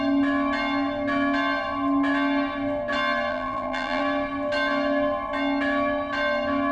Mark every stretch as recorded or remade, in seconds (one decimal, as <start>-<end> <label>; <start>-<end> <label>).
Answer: 0.0-3.3 recorded; 3.3-4.0 remade; 4.0-6.7 recorded